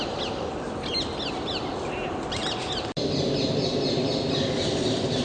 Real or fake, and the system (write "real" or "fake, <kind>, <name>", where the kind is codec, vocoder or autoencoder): real